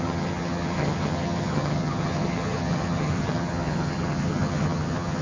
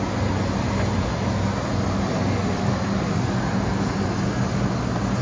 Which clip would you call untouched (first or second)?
second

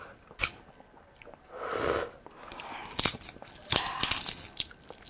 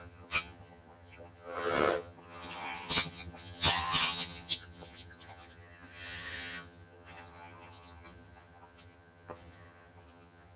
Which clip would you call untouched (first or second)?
first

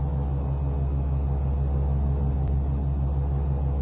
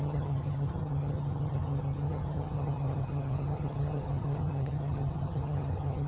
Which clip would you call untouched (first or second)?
first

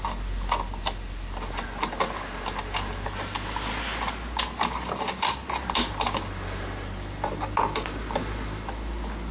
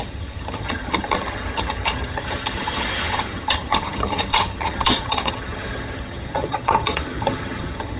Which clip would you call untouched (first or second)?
first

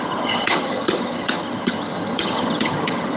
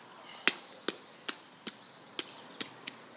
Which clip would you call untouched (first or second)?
second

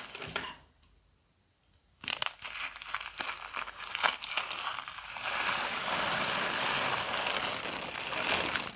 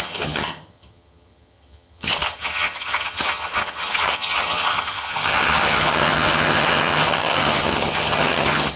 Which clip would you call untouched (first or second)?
first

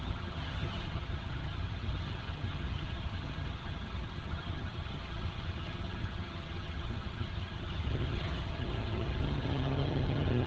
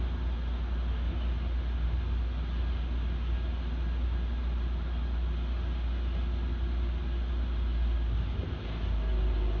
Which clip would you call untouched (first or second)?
second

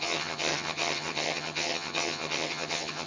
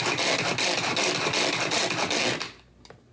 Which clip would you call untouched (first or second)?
second